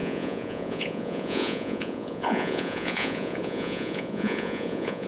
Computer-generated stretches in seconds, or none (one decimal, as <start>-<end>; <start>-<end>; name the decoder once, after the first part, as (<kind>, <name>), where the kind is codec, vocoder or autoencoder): 0.0-5.1 (vocoder, Vocos)